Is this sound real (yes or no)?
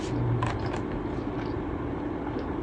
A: yes